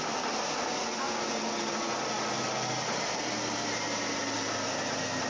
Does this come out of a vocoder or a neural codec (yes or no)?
yes